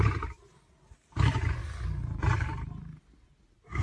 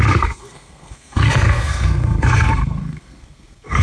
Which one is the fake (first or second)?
second